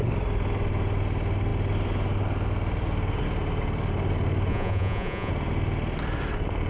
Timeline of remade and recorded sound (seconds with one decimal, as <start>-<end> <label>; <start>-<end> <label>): 0.0-4.5 recorded; 4.5-5.3 remade; 5.3-6.7 recorded